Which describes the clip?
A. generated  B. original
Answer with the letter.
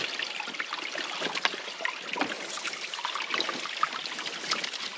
B